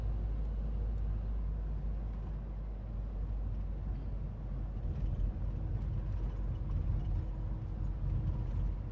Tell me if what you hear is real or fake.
real